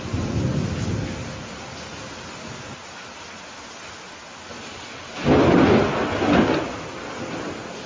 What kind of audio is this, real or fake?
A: real